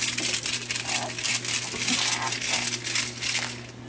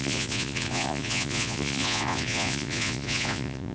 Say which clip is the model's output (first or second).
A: second